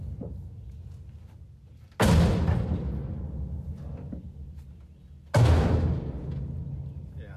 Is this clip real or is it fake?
real